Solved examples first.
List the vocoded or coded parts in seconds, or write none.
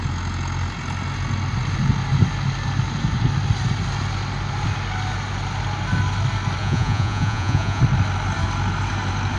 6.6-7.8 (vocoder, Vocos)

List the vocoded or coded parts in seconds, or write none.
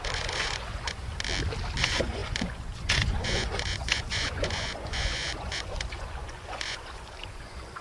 0.0-1.1 (vocoder, Vocos); 1.8-7.8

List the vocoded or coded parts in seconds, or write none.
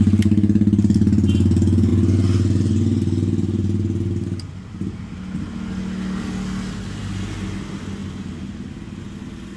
none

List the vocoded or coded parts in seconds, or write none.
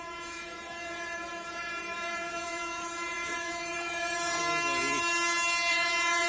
0.0-4.4 (vocoder, Vocos); 5.7-6.3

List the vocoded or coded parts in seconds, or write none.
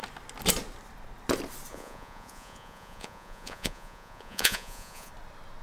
1.7-5.1 (vocoder, Vocos)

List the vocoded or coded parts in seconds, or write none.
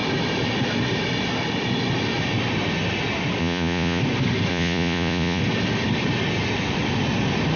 3.4-4.0 (vocoder, Vocos); 4.5-5.4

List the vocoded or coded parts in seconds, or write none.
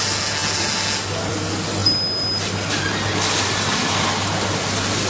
none